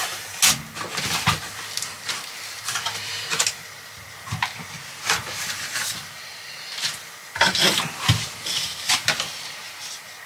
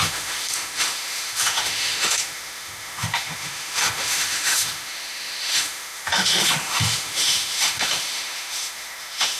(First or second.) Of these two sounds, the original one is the first